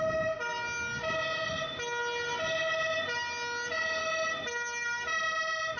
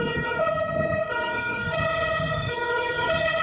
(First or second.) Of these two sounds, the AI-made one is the second